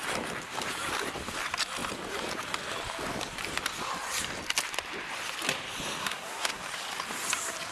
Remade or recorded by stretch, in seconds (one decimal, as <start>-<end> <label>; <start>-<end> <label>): 0.0-6.0 recorded; 6.0-6.6 remade; 6.6-7.7 recorded